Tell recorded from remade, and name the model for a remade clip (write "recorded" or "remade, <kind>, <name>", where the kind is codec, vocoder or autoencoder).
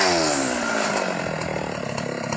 recorded